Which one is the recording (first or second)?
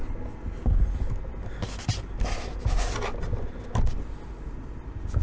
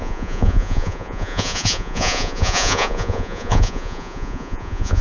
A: first